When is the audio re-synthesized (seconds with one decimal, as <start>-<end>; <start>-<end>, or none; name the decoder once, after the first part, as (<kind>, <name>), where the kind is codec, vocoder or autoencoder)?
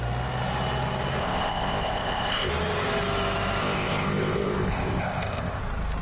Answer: 1.2-2.5 (codec, ZipCodec); 3.6-5.6